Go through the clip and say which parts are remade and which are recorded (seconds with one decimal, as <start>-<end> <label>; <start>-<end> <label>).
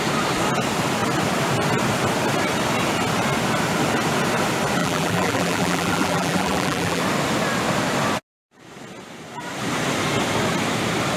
0.0-4.8 recorded; 4.8-7.0 remade; 7.0-11.2 recorded